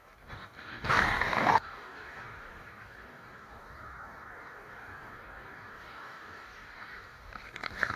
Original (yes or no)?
no